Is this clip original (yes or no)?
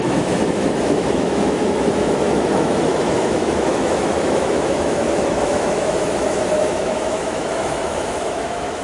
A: no